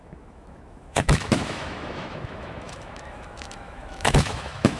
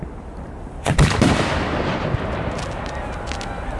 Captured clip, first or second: second